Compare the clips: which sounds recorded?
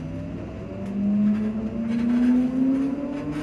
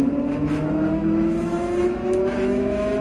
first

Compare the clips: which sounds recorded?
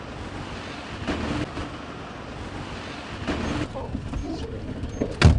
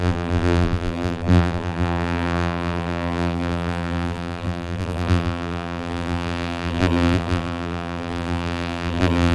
first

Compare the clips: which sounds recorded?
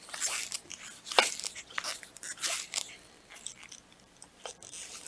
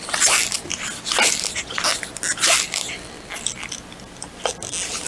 second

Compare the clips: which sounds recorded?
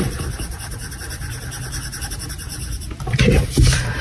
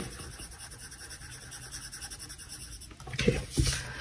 second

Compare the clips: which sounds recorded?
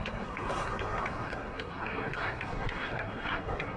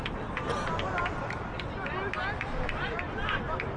second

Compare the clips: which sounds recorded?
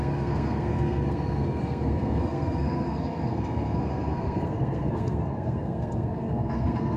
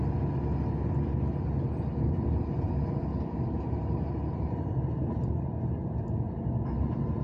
second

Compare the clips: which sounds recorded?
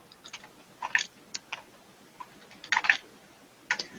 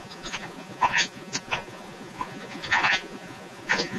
first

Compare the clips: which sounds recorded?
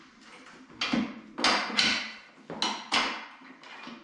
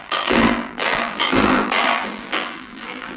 first